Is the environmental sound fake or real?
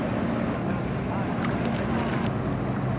real